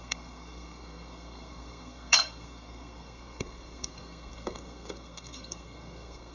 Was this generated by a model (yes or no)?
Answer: yes